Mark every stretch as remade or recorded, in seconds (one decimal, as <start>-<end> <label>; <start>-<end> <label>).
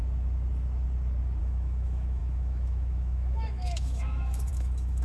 0.0-1.4 recorded; 1.4-5.0 remade